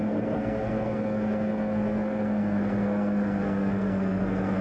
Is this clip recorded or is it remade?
remade